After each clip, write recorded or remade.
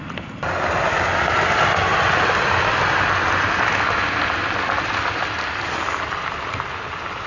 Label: recorded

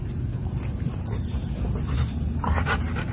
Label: recorded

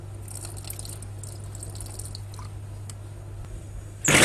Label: recorded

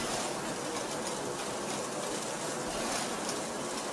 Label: recorded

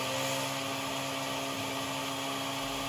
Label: recorded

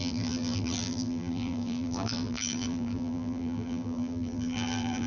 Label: remade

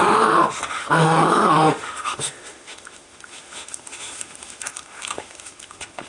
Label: remade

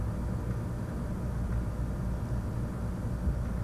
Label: recorded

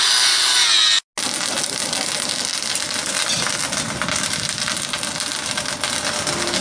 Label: recorded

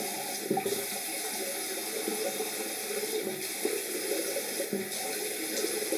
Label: recorded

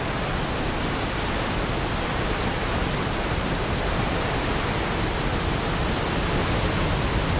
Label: recorded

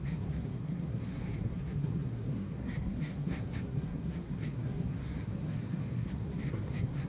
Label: remade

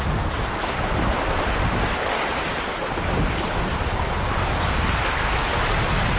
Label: recorded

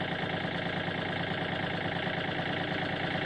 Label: recorded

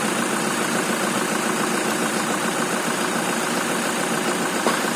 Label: recorded